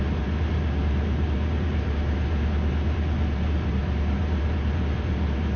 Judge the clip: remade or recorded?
remade